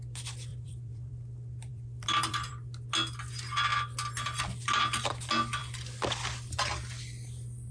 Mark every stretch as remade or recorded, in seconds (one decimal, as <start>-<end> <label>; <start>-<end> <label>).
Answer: 0.0-0.5 recorded; 0.5-1.1 remade; 1.1-1.7 recorded; 1.7-2.5 remade; 2.5-7.7 recorded